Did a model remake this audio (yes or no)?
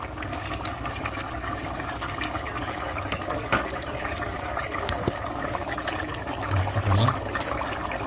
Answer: yes